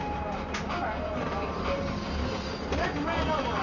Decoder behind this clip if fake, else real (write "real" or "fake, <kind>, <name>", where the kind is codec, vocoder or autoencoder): real